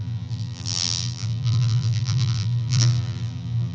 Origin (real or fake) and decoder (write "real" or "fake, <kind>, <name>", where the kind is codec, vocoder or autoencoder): fake, vocoder, BigVGAN v2